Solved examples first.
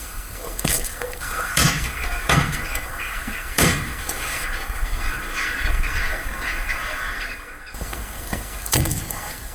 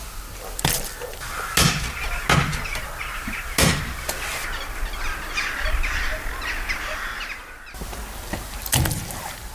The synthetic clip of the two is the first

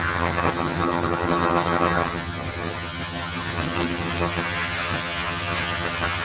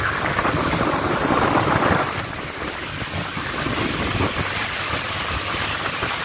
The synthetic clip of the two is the first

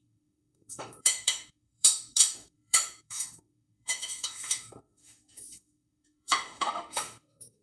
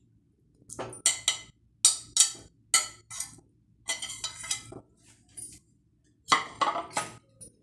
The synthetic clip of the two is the first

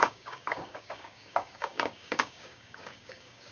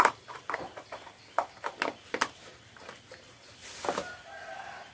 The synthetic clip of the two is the first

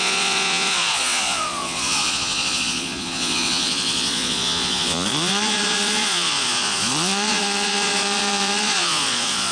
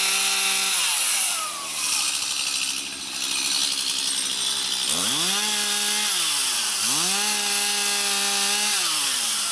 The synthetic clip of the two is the first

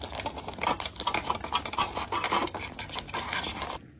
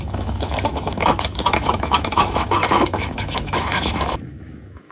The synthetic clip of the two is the second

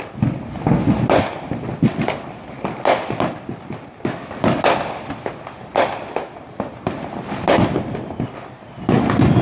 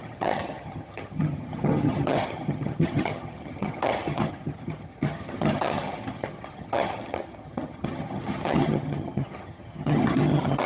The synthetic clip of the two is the second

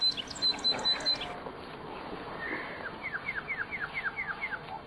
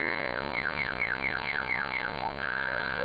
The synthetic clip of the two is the second